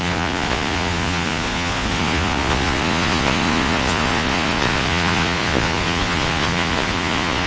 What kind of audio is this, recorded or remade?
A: remade